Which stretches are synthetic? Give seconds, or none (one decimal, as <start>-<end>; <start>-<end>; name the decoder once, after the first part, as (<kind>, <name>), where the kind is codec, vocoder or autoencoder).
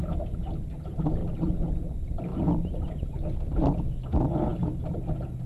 none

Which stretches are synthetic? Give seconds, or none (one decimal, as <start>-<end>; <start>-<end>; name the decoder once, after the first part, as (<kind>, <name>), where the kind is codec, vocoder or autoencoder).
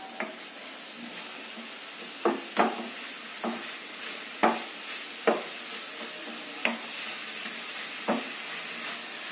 none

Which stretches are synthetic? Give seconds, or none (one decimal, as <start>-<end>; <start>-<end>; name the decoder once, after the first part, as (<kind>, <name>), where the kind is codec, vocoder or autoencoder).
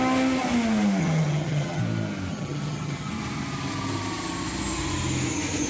1.0-1.8 (vocoder, HiFi-GAN); 2.3-3.1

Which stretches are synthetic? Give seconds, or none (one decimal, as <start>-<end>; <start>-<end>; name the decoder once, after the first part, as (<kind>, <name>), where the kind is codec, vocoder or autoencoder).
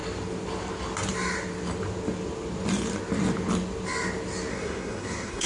4.5-5.5 (codec, SNAC)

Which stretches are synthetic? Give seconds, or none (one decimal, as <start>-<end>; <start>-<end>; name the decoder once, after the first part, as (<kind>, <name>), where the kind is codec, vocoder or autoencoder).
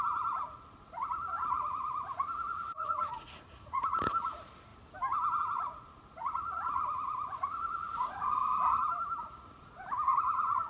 0.0-4.7 (vocoder, Vocos); 5.4-8.4; 9.2-10.7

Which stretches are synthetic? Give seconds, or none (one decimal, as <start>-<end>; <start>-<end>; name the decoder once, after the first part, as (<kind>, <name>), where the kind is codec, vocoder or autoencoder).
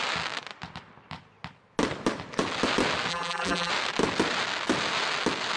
3.1-3.7 (vocoder, BigVGAN v2)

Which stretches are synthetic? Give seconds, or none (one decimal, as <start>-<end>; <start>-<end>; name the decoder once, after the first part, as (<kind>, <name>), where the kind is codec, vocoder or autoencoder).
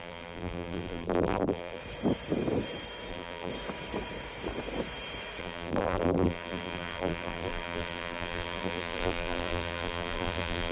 0.0-1.8 (vocoder, BigVGAN v2); 3.1-3.5; 5.4-10.7